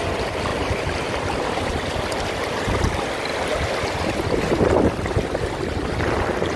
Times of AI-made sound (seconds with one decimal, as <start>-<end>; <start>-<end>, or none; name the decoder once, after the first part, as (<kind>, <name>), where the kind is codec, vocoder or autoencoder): none